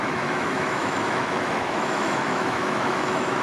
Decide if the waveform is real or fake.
fake